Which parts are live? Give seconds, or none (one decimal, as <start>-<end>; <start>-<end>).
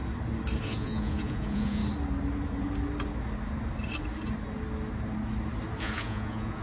0.0-0.6; 1.8-5.8